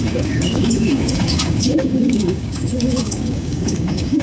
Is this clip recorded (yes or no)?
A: no